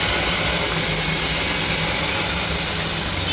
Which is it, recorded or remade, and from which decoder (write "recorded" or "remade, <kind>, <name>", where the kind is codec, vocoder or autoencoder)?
recorded